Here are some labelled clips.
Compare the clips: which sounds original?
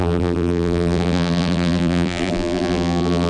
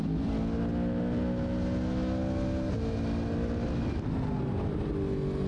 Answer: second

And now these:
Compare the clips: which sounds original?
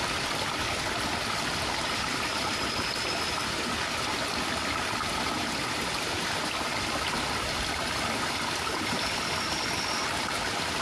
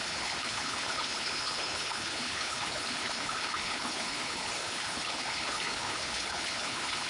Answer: first